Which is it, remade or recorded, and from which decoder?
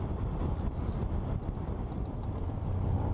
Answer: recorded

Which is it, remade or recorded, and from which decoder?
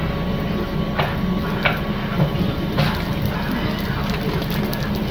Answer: recorded